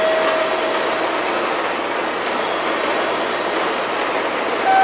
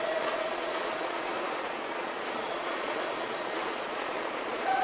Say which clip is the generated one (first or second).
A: second